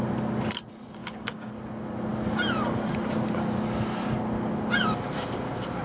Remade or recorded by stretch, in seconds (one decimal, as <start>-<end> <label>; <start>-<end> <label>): 0.0-1.0 recorded; 1.0-1.5 remade; 1.5-5.8 recorded